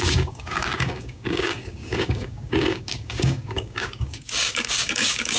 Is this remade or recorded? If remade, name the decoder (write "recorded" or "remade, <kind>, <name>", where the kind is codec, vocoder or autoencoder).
remade, codec, DAC